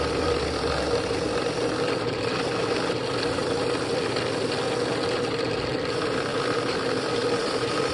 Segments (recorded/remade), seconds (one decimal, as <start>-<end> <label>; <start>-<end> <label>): 0.0-7.9 recorded